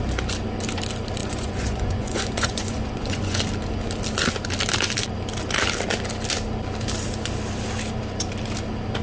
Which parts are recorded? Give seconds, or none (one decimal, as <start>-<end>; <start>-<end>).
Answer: 0.0-1.2; 3.4-9.0